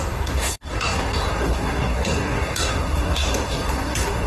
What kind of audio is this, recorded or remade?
remade